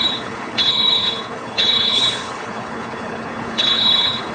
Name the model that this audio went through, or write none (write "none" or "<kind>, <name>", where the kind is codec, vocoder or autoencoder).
codec, HILCodec